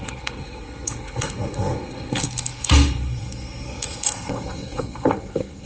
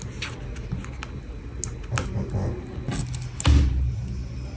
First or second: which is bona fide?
second